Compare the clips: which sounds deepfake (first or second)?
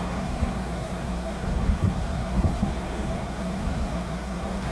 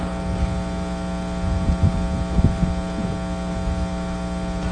first